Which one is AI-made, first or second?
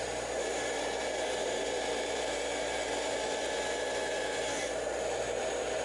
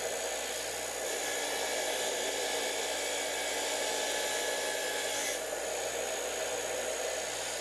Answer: first